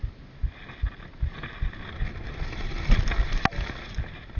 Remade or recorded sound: recorded